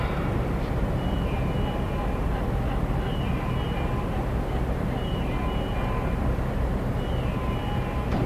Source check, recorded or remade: recorded